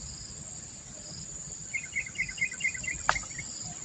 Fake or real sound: real